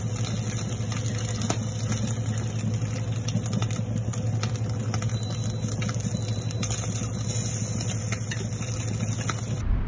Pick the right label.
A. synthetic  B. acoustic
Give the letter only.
B